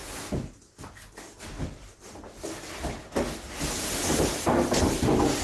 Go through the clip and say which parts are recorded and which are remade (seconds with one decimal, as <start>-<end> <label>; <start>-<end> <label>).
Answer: 0.0-5.4 recorded